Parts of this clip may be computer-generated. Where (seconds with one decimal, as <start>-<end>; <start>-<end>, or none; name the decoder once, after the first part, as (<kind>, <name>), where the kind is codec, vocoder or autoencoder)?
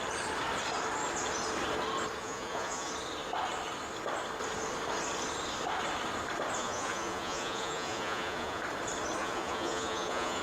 2.2-2.9 (vocoder, Vocos); 6.6-8.6; 9.2-10.4